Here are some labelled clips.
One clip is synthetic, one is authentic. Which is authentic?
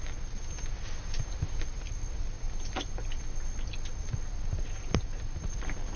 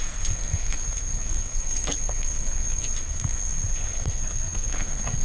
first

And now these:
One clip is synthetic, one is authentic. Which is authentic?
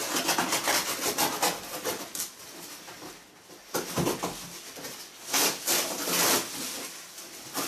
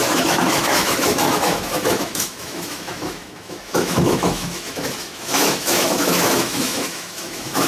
first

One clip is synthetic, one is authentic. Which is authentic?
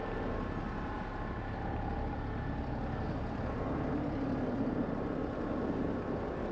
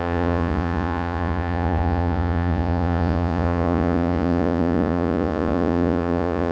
first